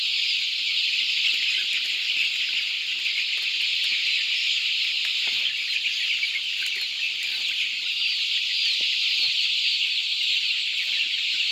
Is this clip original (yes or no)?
yes